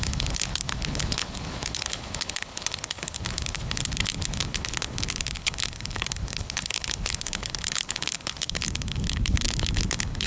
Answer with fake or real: fake